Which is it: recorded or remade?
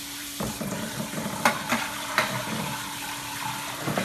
remade